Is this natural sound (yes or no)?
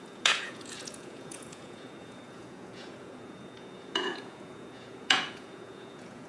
no